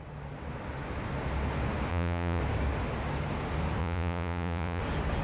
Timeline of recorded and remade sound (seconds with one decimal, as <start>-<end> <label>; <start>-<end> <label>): 0.0-1.9 recorded; 1.9-2.4 remade; 2.4-3.8 recorded; 3.8-4.8 remade; 4.8-5.2 recorded